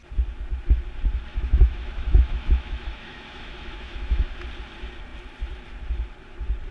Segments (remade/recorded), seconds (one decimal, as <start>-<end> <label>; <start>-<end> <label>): 0.0-1.3 recorded; 1.3-4.3 remade; 4.3-6.7 recorded